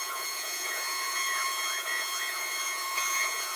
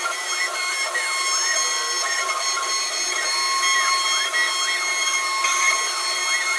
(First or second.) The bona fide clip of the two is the second